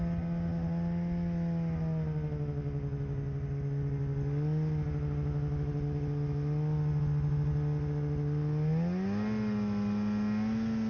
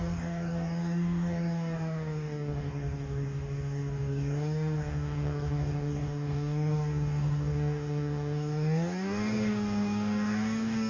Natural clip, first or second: first